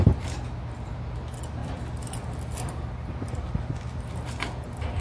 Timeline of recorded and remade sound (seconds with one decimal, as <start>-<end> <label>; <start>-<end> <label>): 0.0-5.0 recorded